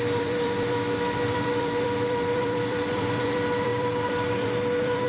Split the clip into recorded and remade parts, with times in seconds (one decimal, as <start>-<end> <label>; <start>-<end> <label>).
0.0-5.1 remade